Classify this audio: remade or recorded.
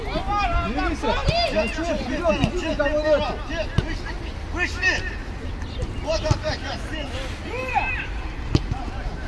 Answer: recorded